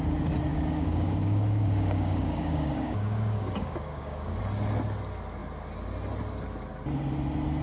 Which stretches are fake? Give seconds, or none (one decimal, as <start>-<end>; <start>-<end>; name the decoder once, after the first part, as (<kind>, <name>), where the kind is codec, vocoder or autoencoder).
0.5-4.4 (codec, DAC)